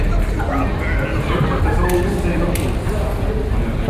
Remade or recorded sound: recorded